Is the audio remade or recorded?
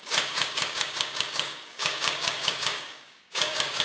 remade